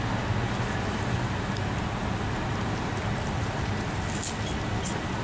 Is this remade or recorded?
recorded